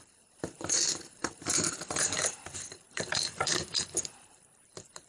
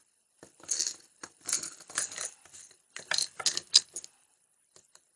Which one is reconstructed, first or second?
first